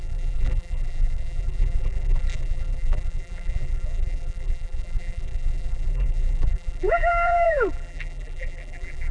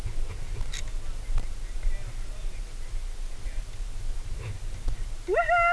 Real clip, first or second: second